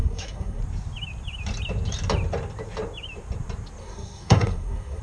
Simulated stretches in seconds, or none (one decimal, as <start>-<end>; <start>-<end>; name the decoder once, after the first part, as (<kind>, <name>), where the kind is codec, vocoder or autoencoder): 0.0-0.6 (codec, SNAC); 3.8-5.0